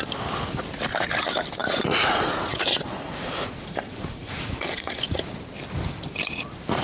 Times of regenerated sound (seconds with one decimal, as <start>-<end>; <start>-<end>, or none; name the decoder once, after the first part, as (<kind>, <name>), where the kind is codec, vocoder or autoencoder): 1.6-5.3 (vocoder, Vocos)